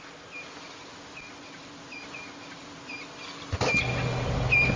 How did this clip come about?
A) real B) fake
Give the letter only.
A